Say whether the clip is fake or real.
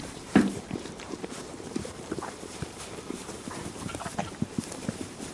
fake